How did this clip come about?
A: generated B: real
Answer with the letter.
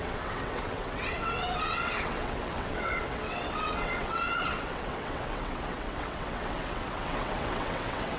A